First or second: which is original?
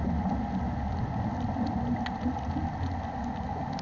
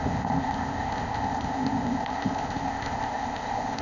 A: first